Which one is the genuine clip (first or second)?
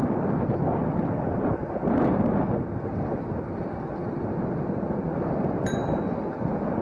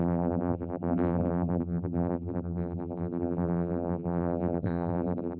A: first